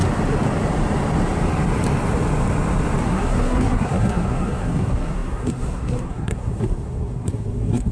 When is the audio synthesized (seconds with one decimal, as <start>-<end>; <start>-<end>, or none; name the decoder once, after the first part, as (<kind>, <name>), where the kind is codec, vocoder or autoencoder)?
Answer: 3.0-7.9 (codec, SNAC)